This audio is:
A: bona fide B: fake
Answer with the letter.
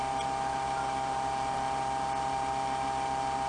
A